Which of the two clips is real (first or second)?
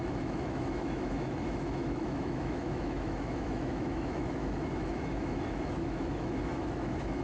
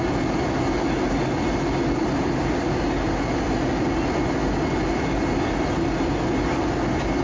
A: second